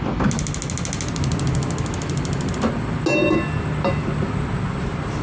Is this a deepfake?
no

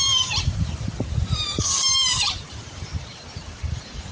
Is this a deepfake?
yes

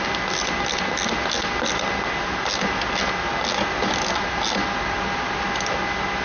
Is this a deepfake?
no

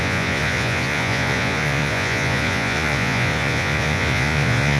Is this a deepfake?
yes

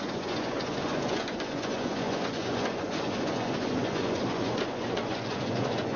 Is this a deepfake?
yes